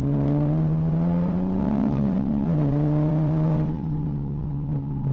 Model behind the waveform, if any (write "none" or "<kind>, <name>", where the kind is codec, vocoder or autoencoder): vocoder, WaveNeXt